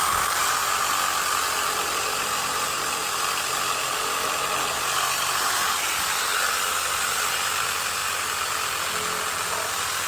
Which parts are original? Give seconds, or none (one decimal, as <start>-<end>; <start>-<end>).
0.6-2.2; 3.0-7.3; 8.0-9.3